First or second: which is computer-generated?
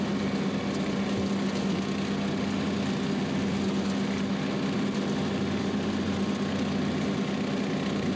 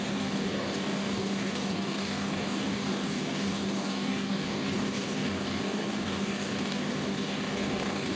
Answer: second